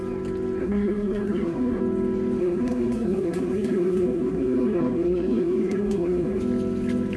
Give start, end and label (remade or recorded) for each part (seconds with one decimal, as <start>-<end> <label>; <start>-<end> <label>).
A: 0.0-0.6 recorded; 0.6-1.8 remade; 1.8-2.4 recorded; 2.4-6.4 remade; 6.4-7.2 recorded